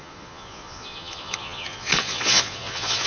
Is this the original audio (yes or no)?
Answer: no